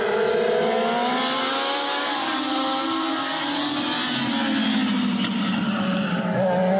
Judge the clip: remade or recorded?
recorded